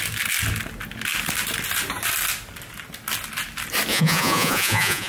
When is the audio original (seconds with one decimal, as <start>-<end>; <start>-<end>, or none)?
0.0-3.9